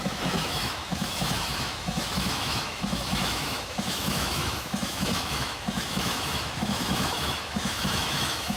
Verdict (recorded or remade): remade